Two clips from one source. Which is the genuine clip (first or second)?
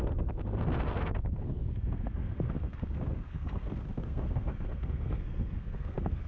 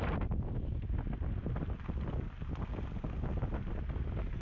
second